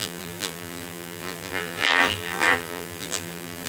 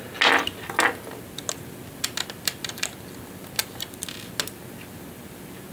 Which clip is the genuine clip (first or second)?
second